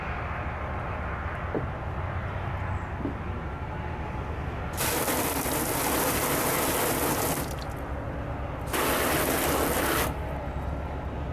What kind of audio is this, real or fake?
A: real